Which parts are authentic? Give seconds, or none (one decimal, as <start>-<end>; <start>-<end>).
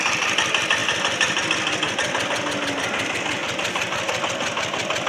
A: 0.0-5.1